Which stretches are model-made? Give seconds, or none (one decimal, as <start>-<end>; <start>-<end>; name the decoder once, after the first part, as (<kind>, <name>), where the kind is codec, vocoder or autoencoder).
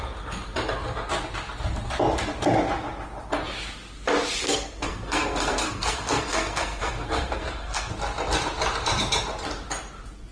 4.4-7.9 (codec, SNAC)